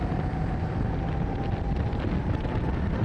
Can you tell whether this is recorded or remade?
recorded